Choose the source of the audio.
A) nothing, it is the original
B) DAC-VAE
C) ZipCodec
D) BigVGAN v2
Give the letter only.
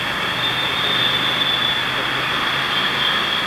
A